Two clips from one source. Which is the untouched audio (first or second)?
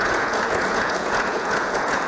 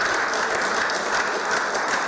second